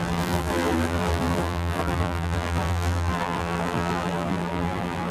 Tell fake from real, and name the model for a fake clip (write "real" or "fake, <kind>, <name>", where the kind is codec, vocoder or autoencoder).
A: fake, vocoder, BigVGAN v2